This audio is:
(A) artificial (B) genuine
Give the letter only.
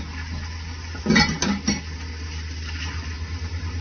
B